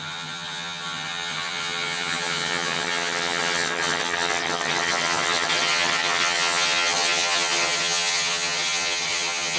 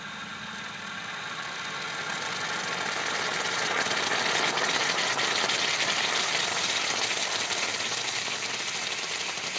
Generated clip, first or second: first